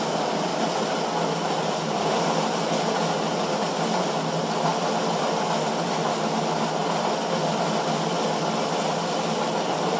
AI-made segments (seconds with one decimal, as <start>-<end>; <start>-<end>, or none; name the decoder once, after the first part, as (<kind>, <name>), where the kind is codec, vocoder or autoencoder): 0.0-0.5 (vocoder, BigVGAN v2); 1.7-4.7; 5.7-6.8; 9.6-10.0